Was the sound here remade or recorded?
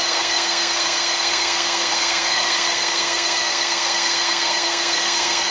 remade